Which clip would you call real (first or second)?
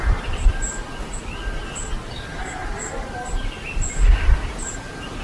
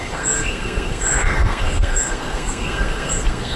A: first